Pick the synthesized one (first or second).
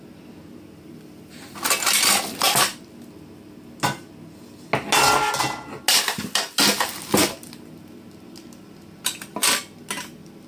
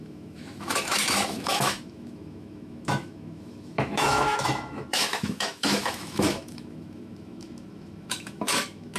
second